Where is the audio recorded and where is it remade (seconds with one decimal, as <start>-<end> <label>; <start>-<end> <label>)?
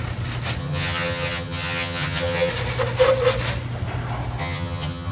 0.0-0.6 recorded; 0.6-2.5 remade; 2.5-4.4 recorded; 4.4-5.1 remade